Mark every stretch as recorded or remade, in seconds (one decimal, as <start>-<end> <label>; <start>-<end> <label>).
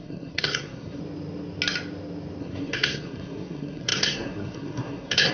0.0-1.0 remade; 1.0-2.4 recorded; 2.4-5.3 remade